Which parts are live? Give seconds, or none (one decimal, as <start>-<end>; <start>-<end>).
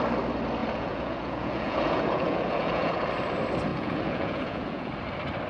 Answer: 0.0-0.6; 3.1-3.7; 4.9-5.5